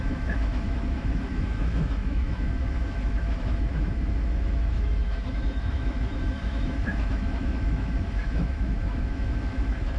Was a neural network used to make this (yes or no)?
yes